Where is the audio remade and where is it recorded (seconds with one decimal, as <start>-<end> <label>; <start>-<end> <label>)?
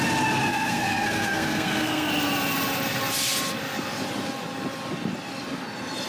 0.0-0.5 recorded; 0.5-2.1 remade; 2.1-6.1 recorded